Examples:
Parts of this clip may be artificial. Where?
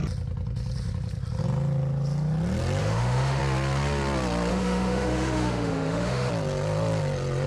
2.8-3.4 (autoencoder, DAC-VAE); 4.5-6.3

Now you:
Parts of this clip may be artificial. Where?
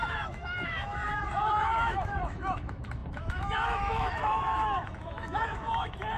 0.0-6.2 (autoencoder, DAC-VAE)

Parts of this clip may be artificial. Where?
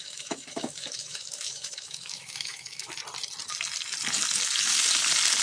0.0-2.9 (autoencoder, DAC-VAE)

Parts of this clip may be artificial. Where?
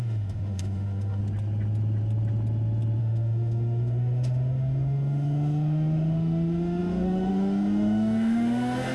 0.0-1.2 (autoencoder, DAC-VAE); 3.0-8.9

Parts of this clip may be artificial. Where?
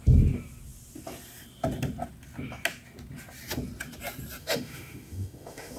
4.4-5.8 (autoencoder, DAC-VAE)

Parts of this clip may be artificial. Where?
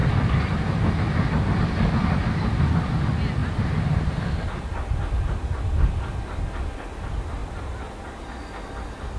none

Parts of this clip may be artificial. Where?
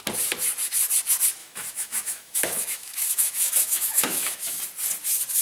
1.4-4.6 (autoencoder, DAC-VAE)